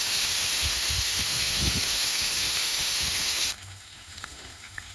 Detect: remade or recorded remade